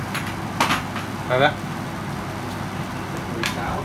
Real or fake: real